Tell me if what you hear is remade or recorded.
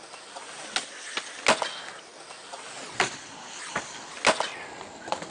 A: recorded